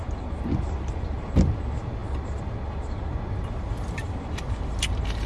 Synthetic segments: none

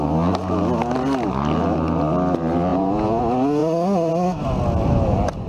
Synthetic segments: 2.7-3.2